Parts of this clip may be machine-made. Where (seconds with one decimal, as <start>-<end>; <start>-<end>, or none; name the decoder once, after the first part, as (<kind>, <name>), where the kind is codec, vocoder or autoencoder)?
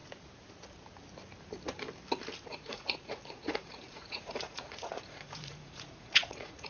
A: 2.5-6.7 (vocoder, Vocos)